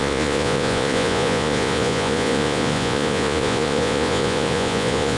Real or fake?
fake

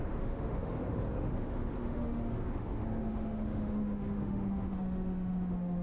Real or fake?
fake